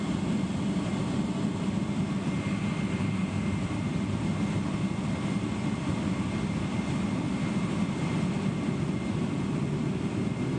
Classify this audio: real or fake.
real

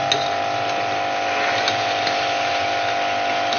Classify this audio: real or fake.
real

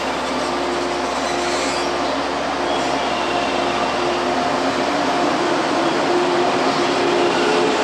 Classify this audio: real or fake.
real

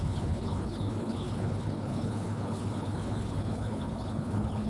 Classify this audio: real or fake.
fake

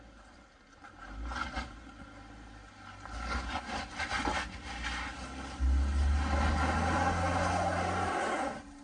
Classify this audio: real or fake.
real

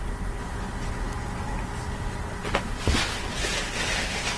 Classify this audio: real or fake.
real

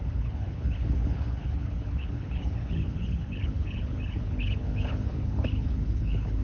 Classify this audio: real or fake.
fake